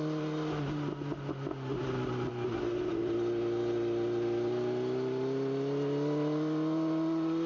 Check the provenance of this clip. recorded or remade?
recorded